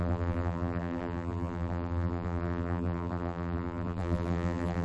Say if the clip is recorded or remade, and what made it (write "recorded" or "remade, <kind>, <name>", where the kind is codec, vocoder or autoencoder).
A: remade, vocoder, BigVGAN v2